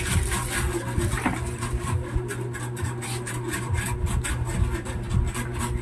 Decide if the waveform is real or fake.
real